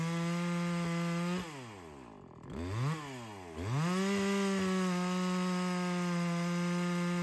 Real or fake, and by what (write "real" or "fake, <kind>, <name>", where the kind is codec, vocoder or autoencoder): real